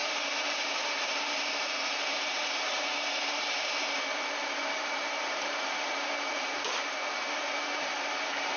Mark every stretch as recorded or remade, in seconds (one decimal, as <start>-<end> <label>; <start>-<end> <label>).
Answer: 0.0-8.6 remade